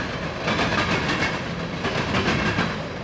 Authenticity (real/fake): real